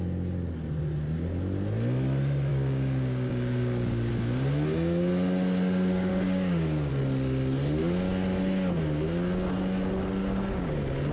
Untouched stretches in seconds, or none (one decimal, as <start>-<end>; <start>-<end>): 0.0-2.5; 4.1-6.1; 6.9-10.2; 10.7-11.1